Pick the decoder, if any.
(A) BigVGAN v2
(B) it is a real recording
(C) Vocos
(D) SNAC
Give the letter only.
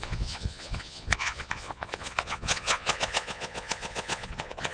C